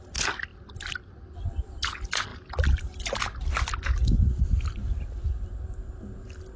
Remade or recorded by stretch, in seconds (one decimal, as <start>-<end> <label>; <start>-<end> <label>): 0.0-6.6 recorded

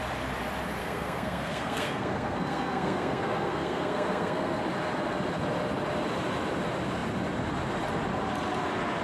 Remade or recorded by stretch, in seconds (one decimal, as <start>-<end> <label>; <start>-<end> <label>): 0.0-0.8 recorded; 0.8-4.6 remade; 4.6-9.0 recorded

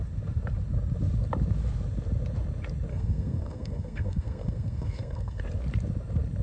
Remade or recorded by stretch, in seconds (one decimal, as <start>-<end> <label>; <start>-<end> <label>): 0.0-2.9 recorded; 2.9-5.4 remade; 5.4-6.4 recorded

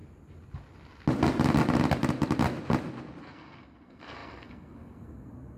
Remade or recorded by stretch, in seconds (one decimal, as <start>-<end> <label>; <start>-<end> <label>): 0.0-3.2 recorded; 3.2-5.6 remade

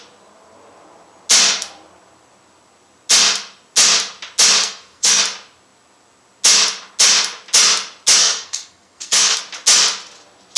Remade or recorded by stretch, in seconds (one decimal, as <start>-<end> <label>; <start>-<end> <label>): 0.0-4.6 recorded; 4.6-5.2 remade; 5.2-8.2 recorded; 8.2-9.4 remade; 9.4-10.6 recorded

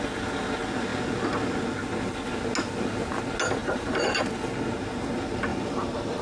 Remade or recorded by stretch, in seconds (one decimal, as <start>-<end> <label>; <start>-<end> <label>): 0.0-3.6 recorded; 3.6-4.2 remade; 4.2-5.5 recorded; 5.5-6.2 remade

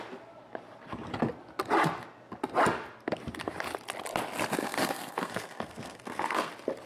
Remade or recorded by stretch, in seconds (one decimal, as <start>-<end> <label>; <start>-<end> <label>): 0.0-4.6 recorded; 4.6-6.5 remade; 6.5-6.9 recorded

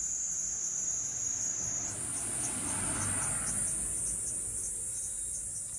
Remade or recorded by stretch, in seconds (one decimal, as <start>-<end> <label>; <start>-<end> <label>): 0.0-5.8 recorded